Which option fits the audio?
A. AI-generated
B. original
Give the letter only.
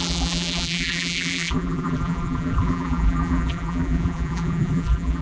A